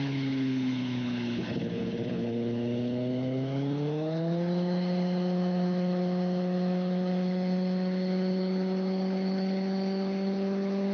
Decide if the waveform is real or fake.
fake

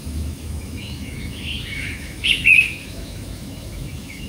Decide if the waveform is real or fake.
fake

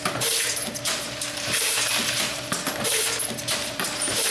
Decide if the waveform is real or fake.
fake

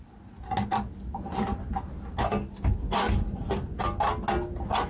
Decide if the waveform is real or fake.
real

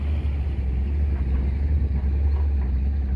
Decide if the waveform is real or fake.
real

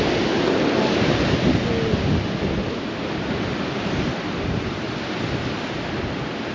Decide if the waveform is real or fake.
real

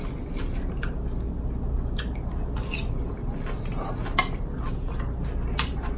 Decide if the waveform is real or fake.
real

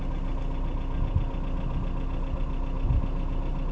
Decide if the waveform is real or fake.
real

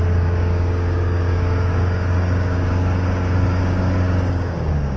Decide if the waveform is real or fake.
fake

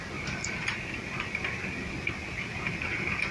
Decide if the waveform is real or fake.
real